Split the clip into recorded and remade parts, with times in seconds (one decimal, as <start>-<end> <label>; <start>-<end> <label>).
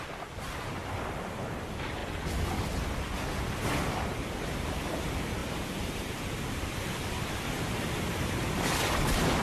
0.0-2.0 remade; 2.0-3.9 recorded; 3.9-9.4 remade